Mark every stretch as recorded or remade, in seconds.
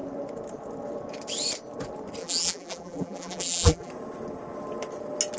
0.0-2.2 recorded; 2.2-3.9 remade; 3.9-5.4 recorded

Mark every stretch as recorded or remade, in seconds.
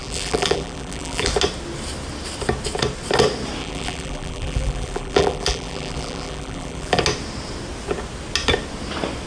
0.0-1.3 remade; 1.3-3.6 recorded; 3.6-7.0 remade; 7.0-9.3 recorded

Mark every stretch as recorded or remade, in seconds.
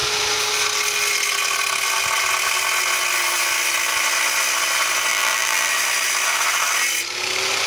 0.0-5.1 recorded; 5.1-5.7 remade; 5.7-7.7 recorded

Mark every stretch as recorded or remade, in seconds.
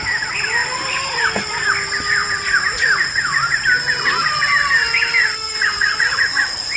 0.0-0.6 recorded; 0.6-1.2 remade; 1.2-2.2 recorded; 2.2-5.9 remade; 5.9-6.8 recorded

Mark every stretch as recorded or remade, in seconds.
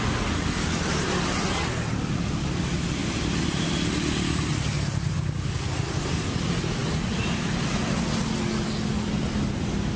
0.0-3.0 recorded; 3.0-3.7 remade; 3.7-10.0 recorded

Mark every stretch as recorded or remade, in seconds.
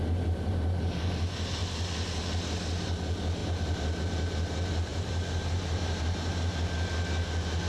0.0-3.4 recorded; 3.4-4.0 remade; 4.0-4.9 recorded; 4.9-6.5 remade; 6.5-7.7 recorded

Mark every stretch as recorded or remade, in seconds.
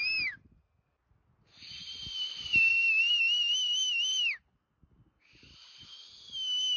0.0-2.7 recorded; 2.7-4.2 remade; 4.2-6.8 recorded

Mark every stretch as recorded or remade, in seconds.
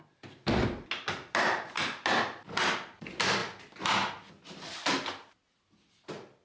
0.0-6.4 recorded